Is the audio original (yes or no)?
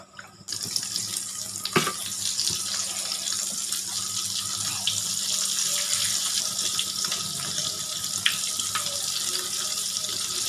yes